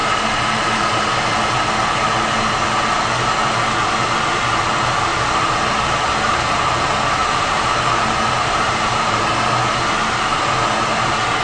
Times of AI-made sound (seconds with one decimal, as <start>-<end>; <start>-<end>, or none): 5.1-6.6; 7.2-9.2